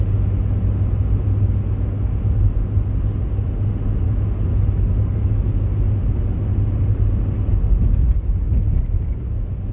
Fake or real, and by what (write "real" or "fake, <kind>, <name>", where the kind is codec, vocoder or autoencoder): real